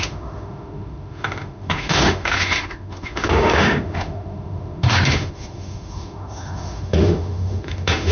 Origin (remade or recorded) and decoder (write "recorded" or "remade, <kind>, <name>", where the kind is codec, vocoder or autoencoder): remade, autoencoder, DAC-VAE